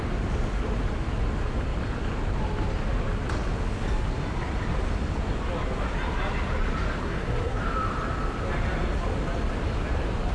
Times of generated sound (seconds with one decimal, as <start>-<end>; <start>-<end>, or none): 7.0-7.6